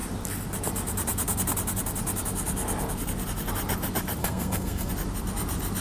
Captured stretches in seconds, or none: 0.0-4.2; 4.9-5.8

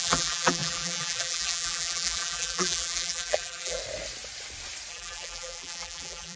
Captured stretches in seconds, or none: 3.8-4.9

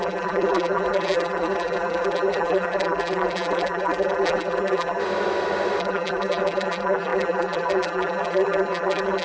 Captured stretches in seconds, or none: 5.0-5.8

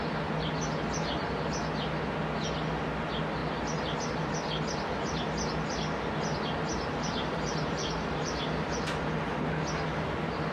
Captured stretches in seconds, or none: 0.0-6.7; 8.2-10.5

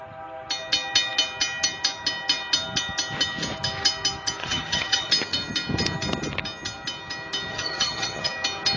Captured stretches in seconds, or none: 0.0-4.4; 5.1-7.5; 8.3-8.8

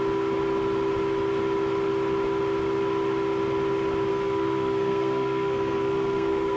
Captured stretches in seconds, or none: 0.0-4.1

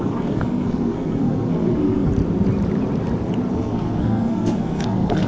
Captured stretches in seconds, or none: 2.1-3.5

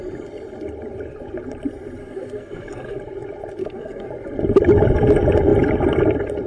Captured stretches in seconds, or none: 0.0-2.0; 3.0-3.6; 4.1-6.5